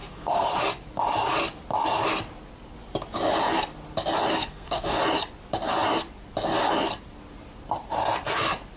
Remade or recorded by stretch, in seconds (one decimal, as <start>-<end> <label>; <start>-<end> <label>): 0.0-0.5 remade; 0.5-4.4 recorded; 4.4-5.0 remade; 5.0-8.8 recorded